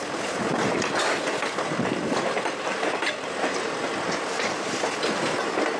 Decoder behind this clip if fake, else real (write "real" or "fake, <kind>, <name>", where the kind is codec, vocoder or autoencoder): real